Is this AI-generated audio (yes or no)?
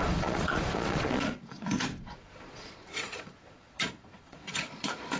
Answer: yes